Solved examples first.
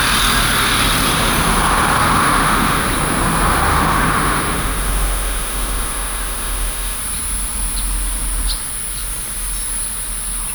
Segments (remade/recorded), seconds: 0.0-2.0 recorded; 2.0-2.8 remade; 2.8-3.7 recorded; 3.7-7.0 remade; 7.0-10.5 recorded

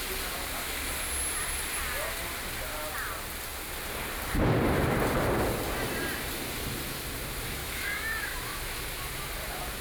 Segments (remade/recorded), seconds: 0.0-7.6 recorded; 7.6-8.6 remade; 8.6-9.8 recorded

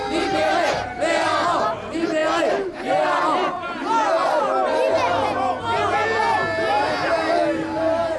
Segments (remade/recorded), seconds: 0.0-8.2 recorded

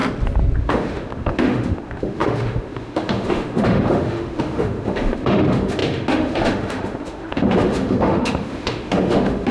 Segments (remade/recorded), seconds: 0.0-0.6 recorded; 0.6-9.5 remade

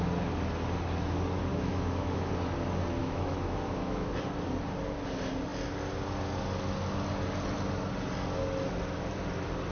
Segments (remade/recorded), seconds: 0.0-1.5 recorded; 1.5-2.3 remade; 2.3-3.0 recorded; 3.0-4.1 remade; 4.1-9.7 recorded